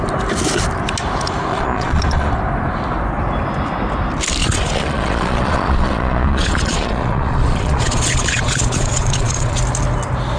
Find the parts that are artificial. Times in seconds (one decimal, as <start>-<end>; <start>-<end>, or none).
1.5-2.3; 4.4-9.6